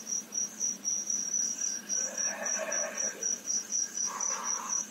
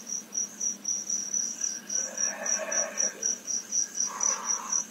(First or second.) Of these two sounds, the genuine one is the second